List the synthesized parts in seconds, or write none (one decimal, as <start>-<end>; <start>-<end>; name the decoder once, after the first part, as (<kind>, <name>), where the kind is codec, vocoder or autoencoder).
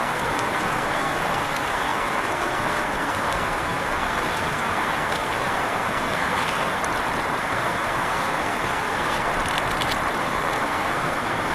0.0-6.8 (codec, SNAC); 7.4-9.3; 10.2-11.5